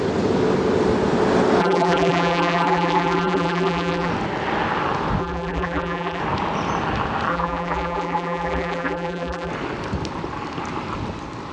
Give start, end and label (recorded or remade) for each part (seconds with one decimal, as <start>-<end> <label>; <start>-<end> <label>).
0.0-1.6 recorded; 1.6-4.1 remade; 4.1-5.2 recorded; 5.2-6.2 remade; 6.2-7.3 recorded; 7.3-9.5 remade; 9.5-11.5 recorded